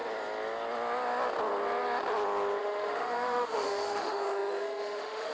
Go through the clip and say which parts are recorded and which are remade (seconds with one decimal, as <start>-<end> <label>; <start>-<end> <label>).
0.0-2.6 recorded; 2.6-5.3 remade